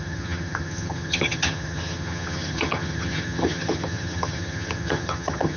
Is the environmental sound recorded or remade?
remade